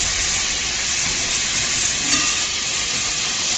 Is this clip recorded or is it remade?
remade